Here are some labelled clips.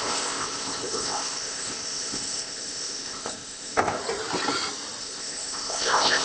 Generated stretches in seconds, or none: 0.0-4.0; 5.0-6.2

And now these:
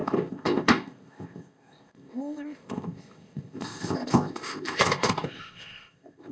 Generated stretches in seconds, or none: 0.0-6.3

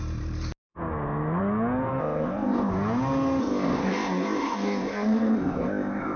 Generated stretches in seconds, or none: 2.0-2.7; 3.4-6.2

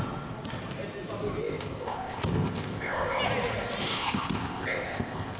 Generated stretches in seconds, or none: 1.4-3.2; 3.8-5.4

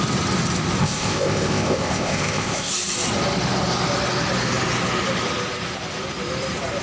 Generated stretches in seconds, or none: 0.8-2.7

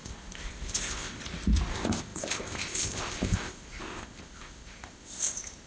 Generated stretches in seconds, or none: 0.0-1.2; 1.7-5.7

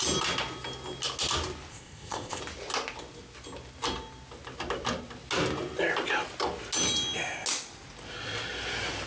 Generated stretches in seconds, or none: 1.7-2.4